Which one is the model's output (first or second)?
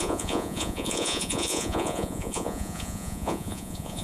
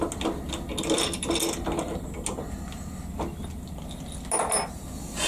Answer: first